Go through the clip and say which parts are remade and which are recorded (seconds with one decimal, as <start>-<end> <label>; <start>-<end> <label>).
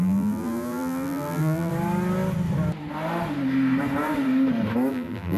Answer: 0.0-1.7 remade; 1.7-4.9 recorded; 4.9-5.4 remade